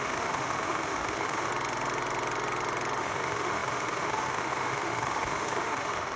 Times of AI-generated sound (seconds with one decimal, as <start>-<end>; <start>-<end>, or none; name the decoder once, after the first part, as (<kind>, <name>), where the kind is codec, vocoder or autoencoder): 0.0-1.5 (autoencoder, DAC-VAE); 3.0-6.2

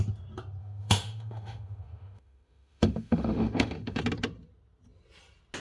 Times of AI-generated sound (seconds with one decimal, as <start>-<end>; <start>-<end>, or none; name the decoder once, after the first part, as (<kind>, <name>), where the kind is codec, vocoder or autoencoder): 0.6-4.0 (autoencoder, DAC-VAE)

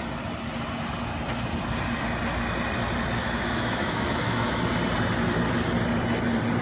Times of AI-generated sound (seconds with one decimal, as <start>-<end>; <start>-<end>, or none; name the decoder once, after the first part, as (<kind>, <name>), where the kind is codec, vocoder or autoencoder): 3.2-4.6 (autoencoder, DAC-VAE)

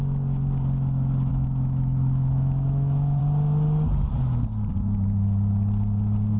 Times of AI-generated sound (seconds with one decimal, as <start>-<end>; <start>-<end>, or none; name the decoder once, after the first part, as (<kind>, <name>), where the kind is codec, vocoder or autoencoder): 1.3-3.2 (autoencoder, DAC-VAE)

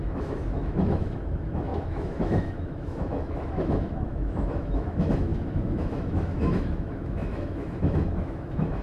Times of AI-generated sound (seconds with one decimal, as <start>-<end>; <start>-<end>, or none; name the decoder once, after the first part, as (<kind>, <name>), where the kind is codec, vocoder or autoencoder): 0.0-8.8 (autoencoder, DAC-VAE)